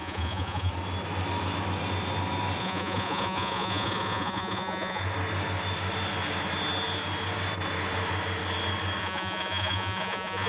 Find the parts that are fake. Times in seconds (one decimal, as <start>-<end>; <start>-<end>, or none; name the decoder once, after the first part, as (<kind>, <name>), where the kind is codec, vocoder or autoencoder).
0.0-0.7 (vocoder, Vocos); 2.6-5.0; 9.0-10.5